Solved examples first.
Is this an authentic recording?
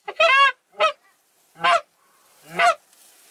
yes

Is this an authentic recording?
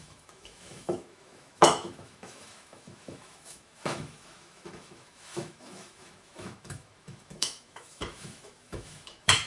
no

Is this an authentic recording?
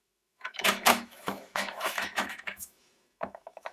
no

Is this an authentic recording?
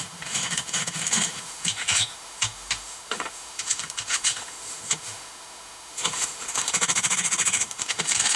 no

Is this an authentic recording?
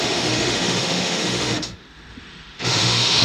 no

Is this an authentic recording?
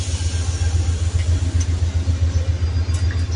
yes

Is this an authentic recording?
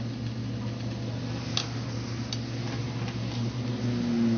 yes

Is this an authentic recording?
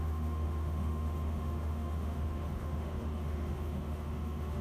no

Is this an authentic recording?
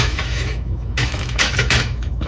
no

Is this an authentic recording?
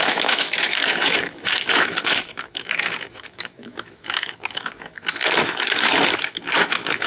no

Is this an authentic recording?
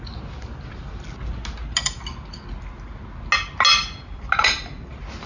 yes